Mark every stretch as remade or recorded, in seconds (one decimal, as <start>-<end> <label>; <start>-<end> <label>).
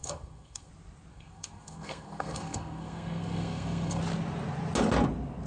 0.0-0.7 remade; 0.7-1.1 recorded; 1.1-4.0 remade; 4.0-5.5 recorded